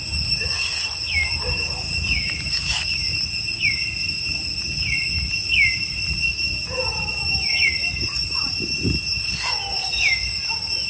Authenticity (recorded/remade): recorded